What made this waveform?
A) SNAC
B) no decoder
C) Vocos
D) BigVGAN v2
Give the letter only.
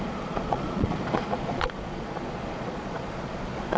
C